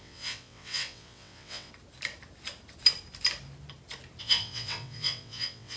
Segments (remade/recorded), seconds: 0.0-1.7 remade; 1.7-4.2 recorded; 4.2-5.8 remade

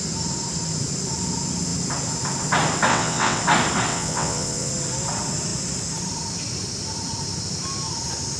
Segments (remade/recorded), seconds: 0.0-2.9 recorded; 2.9-3.4 remade; 3.4-3.9 recorded; 3.9-4.7 remade; 4.7-8.4 recorded